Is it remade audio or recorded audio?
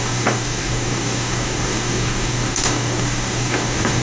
remade